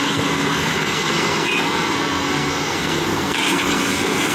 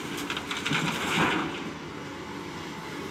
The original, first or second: second